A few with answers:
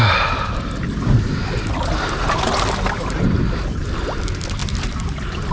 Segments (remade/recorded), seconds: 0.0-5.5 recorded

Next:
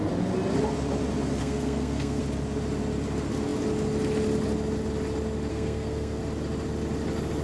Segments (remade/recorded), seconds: 0.0-1.4 recorded; 1.4-2.2 remade; 2.2-5.5 recorded; 5.5-6.2 remade; 6.2-7.4 recorded

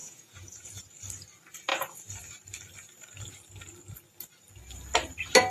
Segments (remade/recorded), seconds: 0.0-0.8 remade; 0.8-5.5 recorded

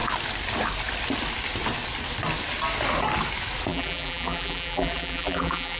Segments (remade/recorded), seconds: 0.0-3.7 recorded; 3.7-5.8 remade

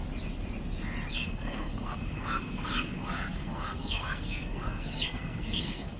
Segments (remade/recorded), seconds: 0.0-1.1 recorded; 1.1-6.0 remade

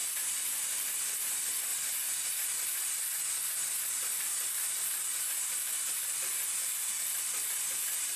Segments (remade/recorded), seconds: 0.0-0.6 recorded; 0.6-1.7 remade; 1.7-3.6 recorded; 3.6-8.2 remade